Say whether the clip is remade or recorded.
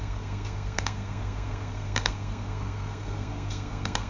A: remade